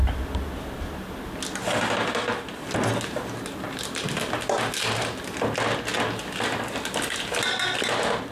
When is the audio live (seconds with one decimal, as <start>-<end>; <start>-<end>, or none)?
0.0-8.3